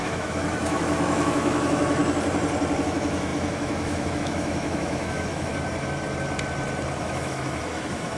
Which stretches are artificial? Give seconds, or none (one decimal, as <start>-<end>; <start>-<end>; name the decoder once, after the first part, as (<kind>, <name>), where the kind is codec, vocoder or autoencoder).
0.0-2.0 (autoencoder, DAC-VAE); 2.8-5.5; 7.0-8.2